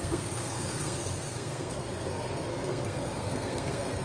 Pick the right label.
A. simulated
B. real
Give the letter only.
A